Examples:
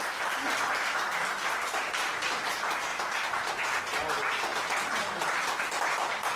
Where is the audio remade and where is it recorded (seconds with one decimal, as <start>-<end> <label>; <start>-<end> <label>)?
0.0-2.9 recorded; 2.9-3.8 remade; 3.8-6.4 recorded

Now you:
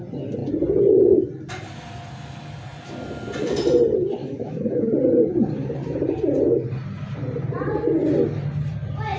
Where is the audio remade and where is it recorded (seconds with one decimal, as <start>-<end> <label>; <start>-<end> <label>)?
0.0-4.2 recorded; 4.2-4.9 remade; 4.9-9.2 recorded

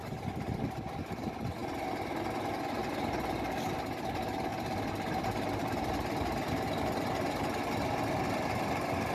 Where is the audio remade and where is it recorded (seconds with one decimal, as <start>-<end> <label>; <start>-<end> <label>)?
0.0-4.5 recorded; 4.5-5.7 remade; 5.7-9.1 recorded